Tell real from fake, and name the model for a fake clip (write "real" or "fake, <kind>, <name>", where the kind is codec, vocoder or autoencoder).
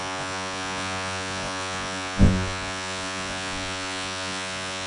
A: fake, vocoder, Vocos